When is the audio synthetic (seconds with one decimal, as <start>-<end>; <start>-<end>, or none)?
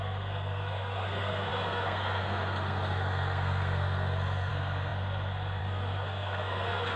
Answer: 0.0-7.0